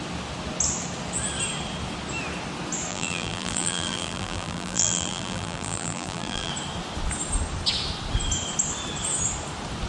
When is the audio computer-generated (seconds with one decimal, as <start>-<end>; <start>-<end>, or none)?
2.9-6.5